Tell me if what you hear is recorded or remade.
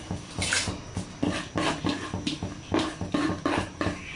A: recorded